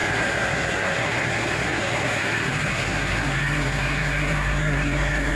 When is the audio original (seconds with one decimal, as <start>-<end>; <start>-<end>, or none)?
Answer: none